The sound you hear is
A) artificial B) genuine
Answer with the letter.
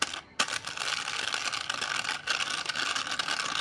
B